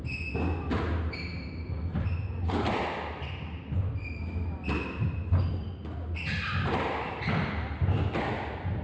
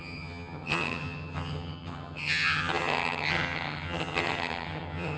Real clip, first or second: first